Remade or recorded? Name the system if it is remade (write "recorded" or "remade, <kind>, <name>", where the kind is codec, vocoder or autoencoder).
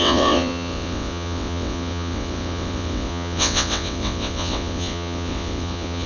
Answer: remade, vocoder, WaveNeXt